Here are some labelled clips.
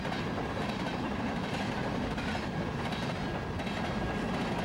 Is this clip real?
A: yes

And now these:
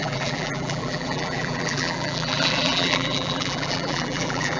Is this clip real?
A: no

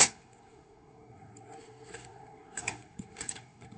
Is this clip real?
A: no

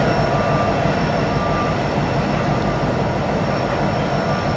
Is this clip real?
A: yes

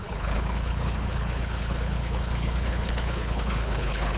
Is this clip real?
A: no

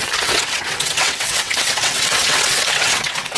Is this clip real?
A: no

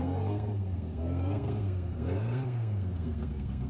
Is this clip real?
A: no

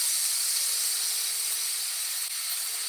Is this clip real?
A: yes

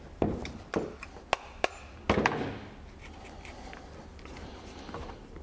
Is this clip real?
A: yes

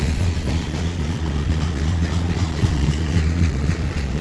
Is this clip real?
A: no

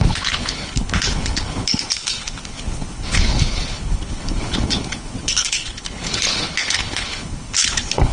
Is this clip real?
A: no